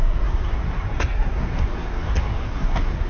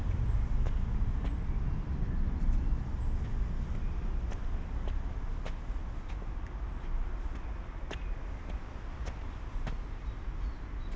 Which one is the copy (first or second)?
first